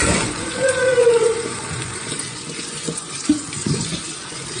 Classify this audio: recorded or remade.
remade